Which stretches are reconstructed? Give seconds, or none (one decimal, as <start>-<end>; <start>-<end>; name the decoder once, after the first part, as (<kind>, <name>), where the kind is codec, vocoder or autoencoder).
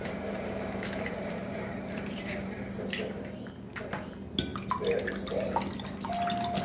0.0-2.5 (vocoder, BigVGAN v2)